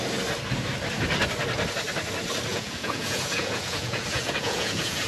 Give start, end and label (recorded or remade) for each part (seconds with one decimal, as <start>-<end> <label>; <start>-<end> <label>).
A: 0.0-2.5 recorded; 2.5-5.1 remade